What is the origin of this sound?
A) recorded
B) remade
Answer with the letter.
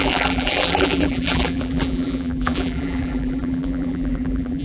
B